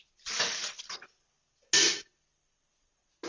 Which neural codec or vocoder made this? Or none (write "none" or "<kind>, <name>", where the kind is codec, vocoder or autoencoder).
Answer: none